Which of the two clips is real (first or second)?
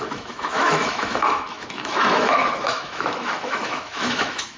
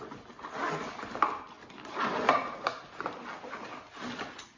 second